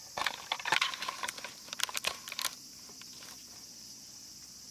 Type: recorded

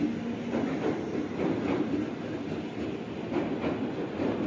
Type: recorded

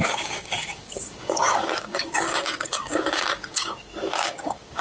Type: remade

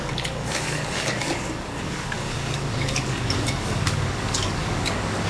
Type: remade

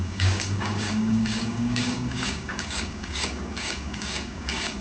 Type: remade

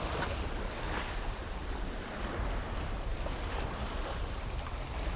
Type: recorded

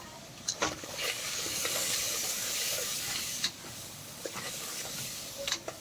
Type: remade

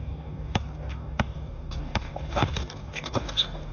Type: remade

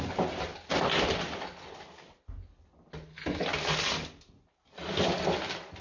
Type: recorded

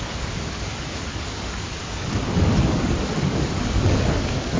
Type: remade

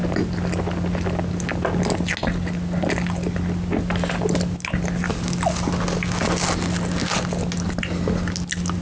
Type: recorded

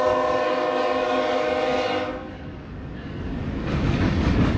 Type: remade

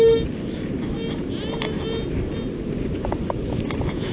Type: recorded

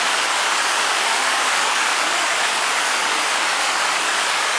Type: remade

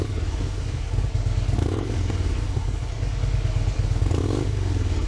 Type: remade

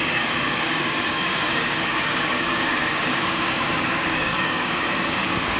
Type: remade